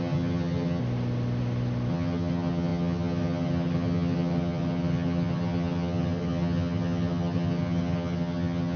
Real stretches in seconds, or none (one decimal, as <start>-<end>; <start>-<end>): 0.8-1.9